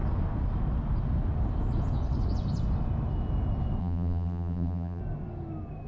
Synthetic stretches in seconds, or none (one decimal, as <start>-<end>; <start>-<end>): 3.8-5.0